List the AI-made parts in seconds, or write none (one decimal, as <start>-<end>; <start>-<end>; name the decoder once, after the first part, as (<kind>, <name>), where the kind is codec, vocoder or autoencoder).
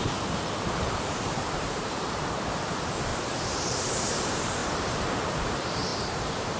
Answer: 0.0-4.6 (vocoder, BigVGAN v2); 5.3-6.6